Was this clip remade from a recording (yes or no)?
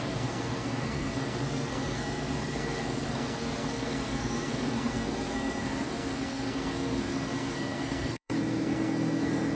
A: yes